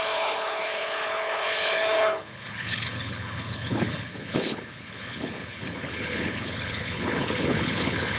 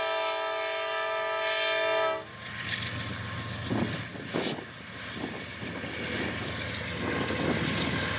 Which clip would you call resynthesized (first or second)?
first